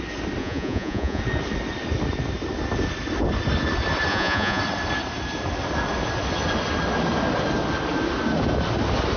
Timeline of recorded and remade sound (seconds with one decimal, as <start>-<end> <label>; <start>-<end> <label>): 0.0-0.4 recorded; 0.4-1.2 remade; 1.2-4.1 recorded; 4.1-4.6 remade; 4.6-9.2 recorded